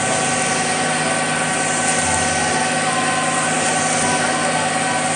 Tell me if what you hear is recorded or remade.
recorded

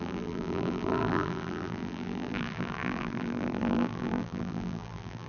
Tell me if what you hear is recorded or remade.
remade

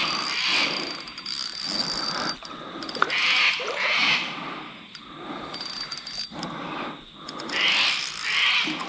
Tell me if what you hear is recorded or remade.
recorded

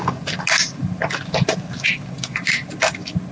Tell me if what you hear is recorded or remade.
recorded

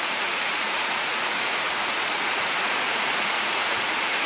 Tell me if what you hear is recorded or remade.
remade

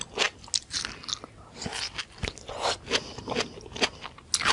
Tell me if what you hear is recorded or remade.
recorded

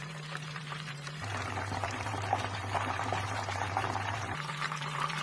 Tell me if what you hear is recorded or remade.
remade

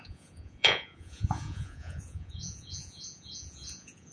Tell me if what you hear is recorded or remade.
remade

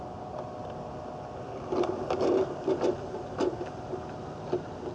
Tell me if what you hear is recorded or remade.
recorded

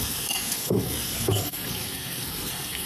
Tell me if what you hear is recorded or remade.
remade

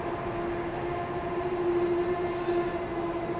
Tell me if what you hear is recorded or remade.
recorded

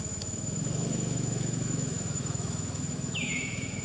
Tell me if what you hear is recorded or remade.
remade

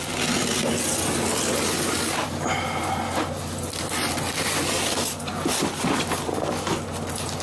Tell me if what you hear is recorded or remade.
recorded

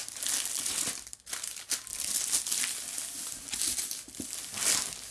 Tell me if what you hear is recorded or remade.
recorded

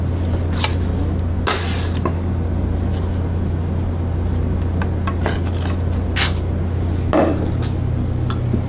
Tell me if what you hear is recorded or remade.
recorded